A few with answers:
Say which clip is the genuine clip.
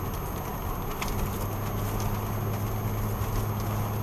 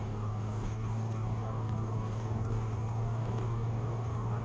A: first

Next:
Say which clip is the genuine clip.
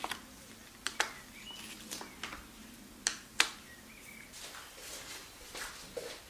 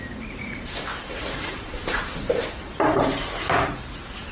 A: first